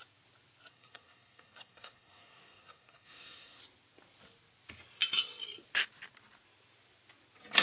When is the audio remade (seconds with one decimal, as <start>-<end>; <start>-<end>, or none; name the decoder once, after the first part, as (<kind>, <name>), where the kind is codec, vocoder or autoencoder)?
0.7-3.6 (codec, SNAC)